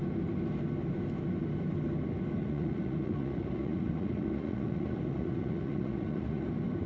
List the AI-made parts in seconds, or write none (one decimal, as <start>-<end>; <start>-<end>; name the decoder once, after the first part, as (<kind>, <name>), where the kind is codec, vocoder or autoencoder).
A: 2.4-6.5 (vocoder, Vocos)